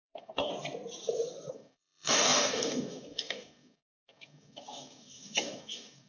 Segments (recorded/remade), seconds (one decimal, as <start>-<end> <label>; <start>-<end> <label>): 0.0-0.5 remade; 0.5-1.5 recorded; 1.5-6.1 remade